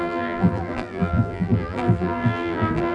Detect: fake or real fake